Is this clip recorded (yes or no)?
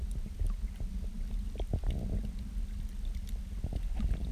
yes